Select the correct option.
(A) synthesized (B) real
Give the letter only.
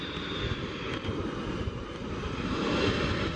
B